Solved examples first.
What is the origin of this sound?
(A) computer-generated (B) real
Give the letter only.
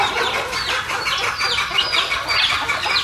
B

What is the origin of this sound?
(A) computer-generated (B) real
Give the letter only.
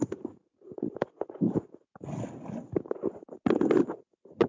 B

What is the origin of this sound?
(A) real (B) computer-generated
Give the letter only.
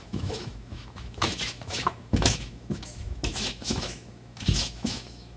B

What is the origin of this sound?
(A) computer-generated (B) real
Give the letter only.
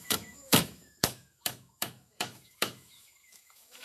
A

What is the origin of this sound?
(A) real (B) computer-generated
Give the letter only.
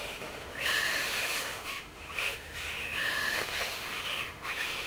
B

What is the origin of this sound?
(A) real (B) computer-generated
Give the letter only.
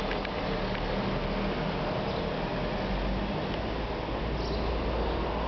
A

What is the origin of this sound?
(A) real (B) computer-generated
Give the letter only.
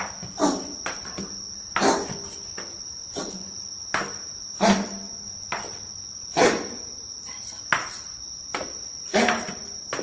A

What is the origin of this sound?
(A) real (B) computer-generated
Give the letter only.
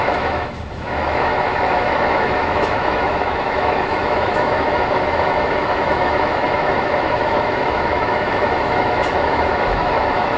B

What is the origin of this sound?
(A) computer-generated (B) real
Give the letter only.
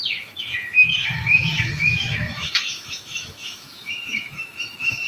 A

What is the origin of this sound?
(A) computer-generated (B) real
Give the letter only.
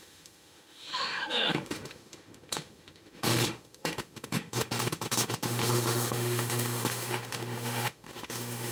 A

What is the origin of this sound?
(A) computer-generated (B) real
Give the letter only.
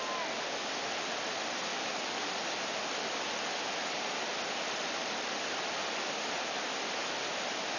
B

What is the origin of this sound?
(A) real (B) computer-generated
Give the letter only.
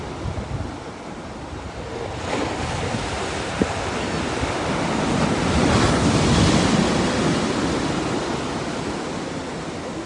A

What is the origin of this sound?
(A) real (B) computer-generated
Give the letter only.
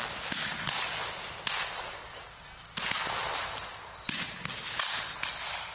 A